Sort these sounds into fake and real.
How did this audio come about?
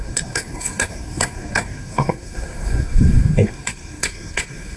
fake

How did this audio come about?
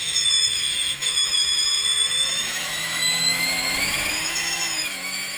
fake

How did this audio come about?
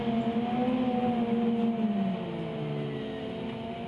real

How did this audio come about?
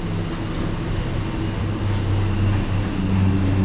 real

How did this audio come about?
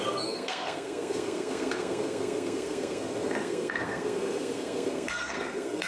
fake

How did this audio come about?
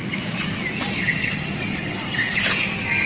real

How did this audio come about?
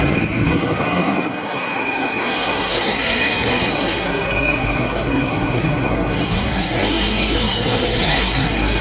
fake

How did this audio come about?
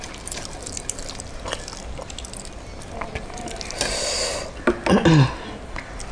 real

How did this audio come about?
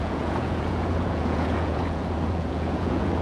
fake